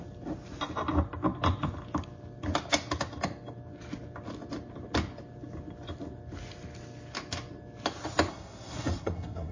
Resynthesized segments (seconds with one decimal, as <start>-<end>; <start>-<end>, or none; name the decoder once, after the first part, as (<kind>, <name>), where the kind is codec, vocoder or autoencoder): 8.3-9.5 (codec, SNAC)